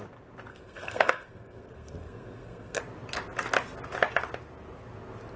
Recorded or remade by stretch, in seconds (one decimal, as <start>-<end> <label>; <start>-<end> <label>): 0.0-0.5 recorded; 0.5-2.8 remade; 2.8-5.4 recorded